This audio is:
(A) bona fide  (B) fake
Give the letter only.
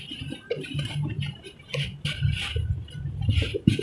B